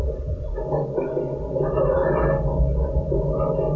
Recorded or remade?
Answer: recorded